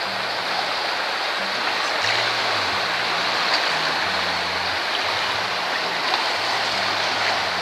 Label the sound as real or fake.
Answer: real